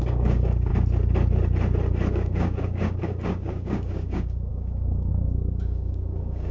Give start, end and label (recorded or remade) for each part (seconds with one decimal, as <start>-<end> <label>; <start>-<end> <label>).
0.0-0.7 remade; 0.7-2.1 recorded; 2.1-6.5 remade